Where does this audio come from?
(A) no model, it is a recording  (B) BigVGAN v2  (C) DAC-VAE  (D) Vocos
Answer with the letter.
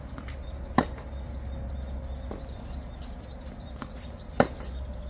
A